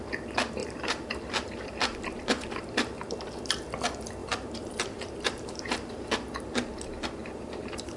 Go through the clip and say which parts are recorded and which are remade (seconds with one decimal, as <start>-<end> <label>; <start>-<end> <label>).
0.0-0.6 recorded; 0.6-3.1 remade; 3.1-4.2 recorded; 4.2-5.9 remade; 5.9-7.2 recorded; 7.2-8.0 remade